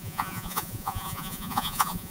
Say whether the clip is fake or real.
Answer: fake